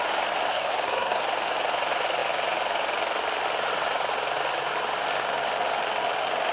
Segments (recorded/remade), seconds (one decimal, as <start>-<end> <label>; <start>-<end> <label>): 0.0-0.5 recorded; 0.5-1.2 remade; 1.2-6.5 recorded